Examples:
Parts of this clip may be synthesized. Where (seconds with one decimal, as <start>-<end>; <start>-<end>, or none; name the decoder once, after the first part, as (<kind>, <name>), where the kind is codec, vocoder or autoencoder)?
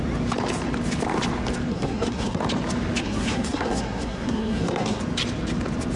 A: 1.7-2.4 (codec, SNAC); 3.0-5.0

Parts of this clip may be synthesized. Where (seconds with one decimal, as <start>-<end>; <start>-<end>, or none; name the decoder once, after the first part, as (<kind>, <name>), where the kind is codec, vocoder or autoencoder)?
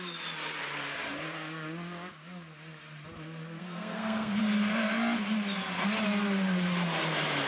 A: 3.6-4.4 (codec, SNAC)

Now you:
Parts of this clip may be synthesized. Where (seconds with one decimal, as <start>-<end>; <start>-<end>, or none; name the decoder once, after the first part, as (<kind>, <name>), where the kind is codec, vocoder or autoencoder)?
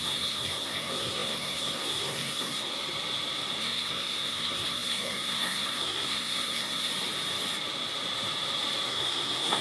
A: 0.0-2.7 (codec, SNAC); 3.6-6.9; 8.9-9.6